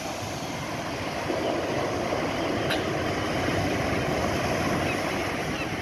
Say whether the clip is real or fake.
real